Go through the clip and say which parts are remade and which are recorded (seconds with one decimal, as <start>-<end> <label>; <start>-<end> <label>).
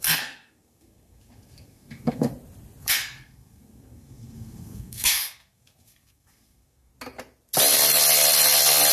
0.0-2.3 remade; 2.3-2.8 recorded; 2.8-6.9 remade; 6.9-8.9 recorded